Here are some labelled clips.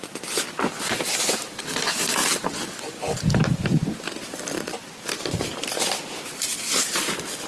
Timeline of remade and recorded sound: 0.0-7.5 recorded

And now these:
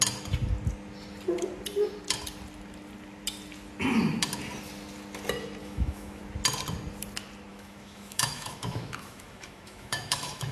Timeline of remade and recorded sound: 0.0-5.6 recorded; 5.6-6.2 remade; 6.2-7.5 recorded; 7.5-10.5 remade

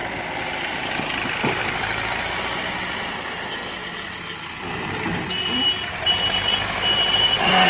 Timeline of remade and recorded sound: 0.0-7.7 recorded

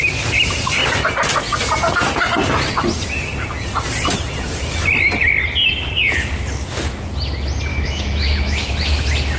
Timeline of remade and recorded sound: 0.0-7.7 recorded; 7.7-8.7 remade; 8.7-9.4 recorded

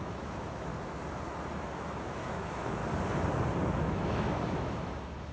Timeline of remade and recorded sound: 0.0-0.7 remade; 0.7-1.6 recorded; 1.6-2.8 remade; 2.8-3.8 recorded; 3.8-5.3 remade

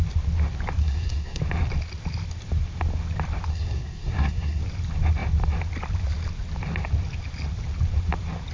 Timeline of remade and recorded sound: 0.0-0.8 recorded; 0.8-1.4 remade; 1.4-3.5 recorded; 3.5-4.6 remade; 4.6-8.5 recorded

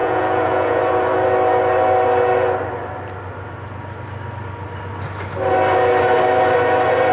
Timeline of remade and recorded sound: 0.0-0.8 remade; 0.8-7.1 recorded